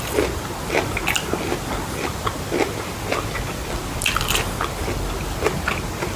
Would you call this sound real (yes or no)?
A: yes